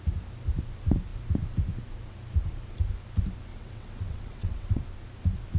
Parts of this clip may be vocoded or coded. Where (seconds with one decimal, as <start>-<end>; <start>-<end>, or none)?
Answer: 3.5-4.8